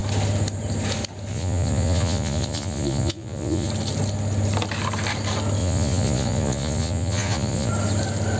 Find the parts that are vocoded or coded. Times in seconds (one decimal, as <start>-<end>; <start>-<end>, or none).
1.3-3.7; 5.6-7.7

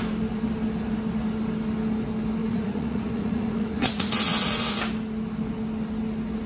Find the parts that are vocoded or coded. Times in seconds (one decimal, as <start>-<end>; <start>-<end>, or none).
2.4-4.8

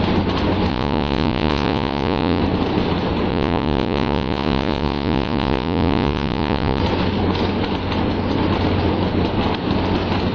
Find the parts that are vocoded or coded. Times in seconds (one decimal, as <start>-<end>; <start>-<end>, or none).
0.7-2.4; 3.3-6.8

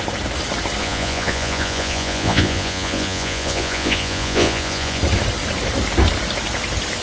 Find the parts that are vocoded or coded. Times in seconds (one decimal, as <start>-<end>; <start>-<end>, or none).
0.8-5.0

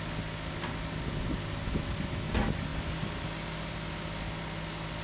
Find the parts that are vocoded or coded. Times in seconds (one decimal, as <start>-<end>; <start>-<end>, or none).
none

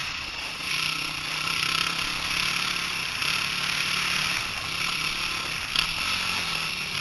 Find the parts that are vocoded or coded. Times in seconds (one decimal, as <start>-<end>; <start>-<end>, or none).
0.0-0.7